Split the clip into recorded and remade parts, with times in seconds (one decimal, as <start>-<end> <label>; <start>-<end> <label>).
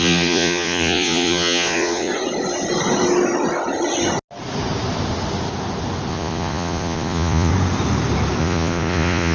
0.0-2.1 remade; 2.1-6.1 recorded; 6.1-7.5 remade; 7.5-8.4 recorded; 8.4-9.3 remade